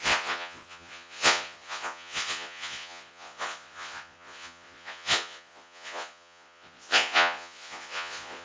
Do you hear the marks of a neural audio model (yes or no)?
yes